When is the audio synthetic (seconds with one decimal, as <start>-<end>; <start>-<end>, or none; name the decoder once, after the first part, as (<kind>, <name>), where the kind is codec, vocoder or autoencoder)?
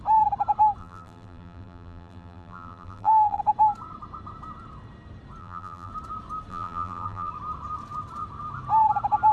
0.8-3.4 (vocoder, BigVGAN v2); 5.4-5.9; 6.5-7.3